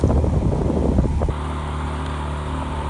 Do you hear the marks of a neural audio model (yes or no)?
no